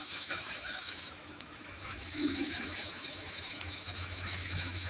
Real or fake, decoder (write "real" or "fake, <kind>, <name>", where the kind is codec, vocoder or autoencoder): fake, autoencoder, DAC-VAE